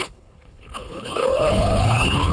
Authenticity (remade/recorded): remade